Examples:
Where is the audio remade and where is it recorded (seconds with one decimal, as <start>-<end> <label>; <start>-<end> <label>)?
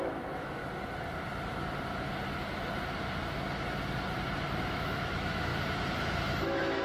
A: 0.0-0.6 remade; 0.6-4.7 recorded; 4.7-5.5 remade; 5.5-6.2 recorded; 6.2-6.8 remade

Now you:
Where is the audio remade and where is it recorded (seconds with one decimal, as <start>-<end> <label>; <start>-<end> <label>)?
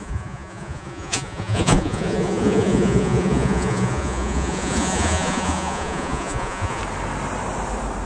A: 0.0-6.8 remade; 6.8-8.1 recorded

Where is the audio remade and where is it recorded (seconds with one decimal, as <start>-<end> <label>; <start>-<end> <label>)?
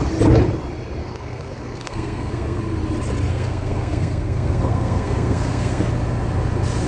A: 0.0-1.0 recorded; 1.0-2.6 remade; 2.6-3.3 recorded; 3.3-5.9 remade; 5.9-6.9 recorded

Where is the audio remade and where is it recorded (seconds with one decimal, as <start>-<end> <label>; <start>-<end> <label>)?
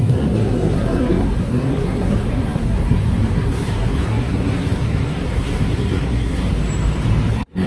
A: 0.0-6.5 remade; 6.5-7.3 recorded; 7.3-7.7 remade